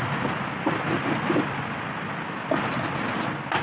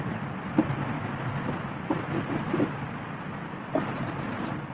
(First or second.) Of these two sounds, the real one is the first